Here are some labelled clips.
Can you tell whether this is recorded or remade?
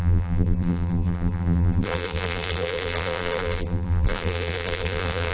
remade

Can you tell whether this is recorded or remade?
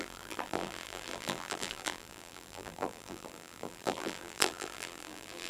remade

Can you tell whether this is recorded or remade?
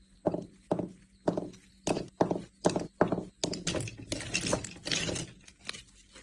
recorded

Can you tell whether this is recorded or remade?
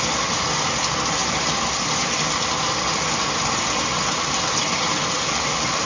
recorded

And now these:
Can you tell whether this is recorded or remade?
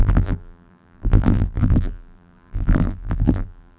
remade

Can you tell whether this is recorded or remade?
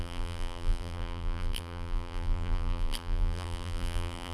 remade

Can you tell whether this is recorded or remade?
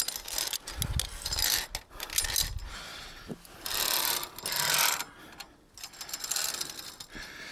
recorded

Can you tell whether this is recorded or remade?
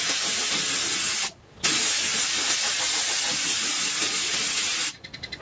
recorded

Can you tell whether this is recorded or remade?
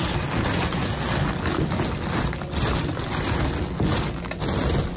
recorded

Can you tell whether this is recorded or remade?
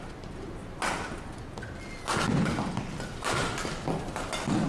recorded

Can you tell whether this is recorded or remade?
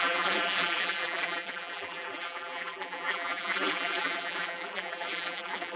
remade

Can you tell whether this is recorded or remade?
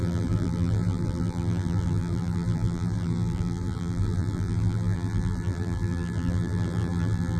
remade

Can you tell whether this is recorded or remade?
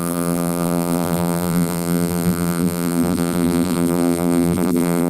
remade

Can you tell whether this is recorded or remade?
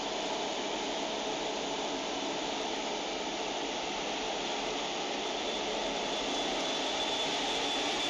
remade